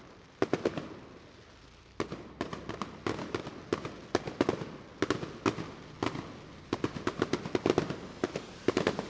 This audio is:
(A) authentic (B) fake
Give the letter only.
A